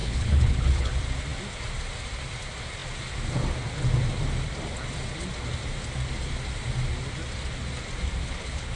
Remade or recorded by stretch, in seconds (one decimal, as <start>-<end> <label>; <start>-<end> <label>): 0.0-0.9 remade; 0.9-8.2 recorded; 8.2-8.8 remade